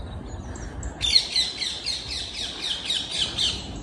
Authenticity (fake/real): real